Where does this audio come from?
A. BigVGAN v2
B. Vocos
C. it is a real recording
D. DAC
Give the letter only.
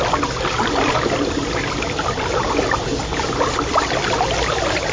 C